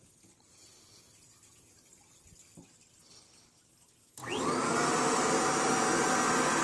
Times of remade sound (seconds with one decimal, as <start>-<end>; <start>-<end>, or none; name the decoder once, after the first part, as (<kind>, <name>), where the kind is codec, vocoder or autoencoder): none